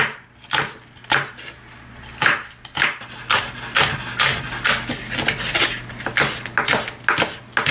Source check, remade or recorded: recorded